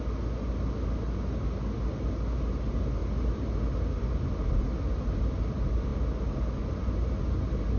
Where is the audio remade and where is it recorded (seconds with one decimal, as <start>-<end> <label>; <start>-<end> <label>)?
0.0-7.8 recorded